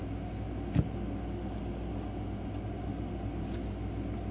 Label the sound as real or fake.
real